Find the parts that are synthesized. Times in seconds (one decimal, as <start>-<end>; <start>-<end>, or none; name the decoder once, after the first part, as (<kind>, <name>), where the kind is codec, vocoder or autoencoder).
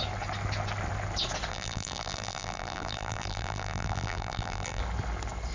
1.5-4.8 (vocoder, BigVGAN v2)